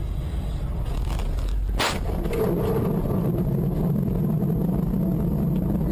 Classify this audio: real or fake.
real